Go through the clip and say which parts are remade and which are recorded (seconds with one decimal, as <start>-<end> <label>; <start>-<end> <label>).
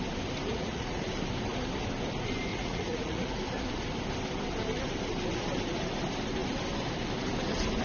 0.0-0.5 recorded; 0.5-1.0 remade; 1.0-2.5 recorded; 2.5-3.4 remade; 3.4-7.8 recorded